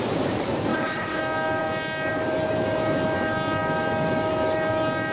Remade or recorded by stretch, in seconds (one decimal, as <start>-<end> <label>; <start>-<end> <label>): 0.0-0.7 recorded; 0.7-1.2 remade; 1.2-5.1 recorded